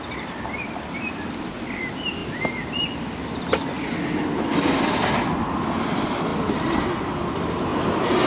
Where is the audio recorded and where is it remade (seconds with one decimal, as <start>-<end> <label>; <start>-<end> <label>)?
0.0-8.3 recorded